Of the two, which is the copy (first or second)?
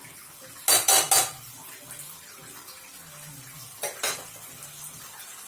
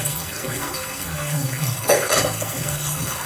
second